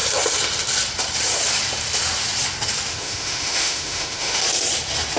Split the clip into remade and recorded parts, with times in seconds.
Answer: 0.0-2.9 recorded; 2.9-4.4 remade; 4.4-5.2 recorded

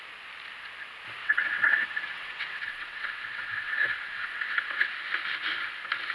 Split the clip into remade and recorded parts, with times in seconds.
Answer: 0.0-1.2 recorded; 1.2-4.9 remade; 4.9-6.1 recorded

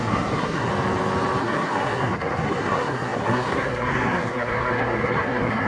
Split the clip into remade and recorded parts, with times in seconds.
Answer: 0.0-0.7 remade; 0.7-1.4 recorded; 1.4-5.7 remade

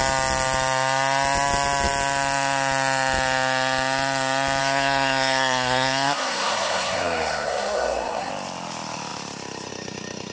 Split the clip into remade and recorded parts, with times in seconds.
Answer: 0.0-4.6 recorded; 4.6-8.3 remade; 8.3-10.3 recorded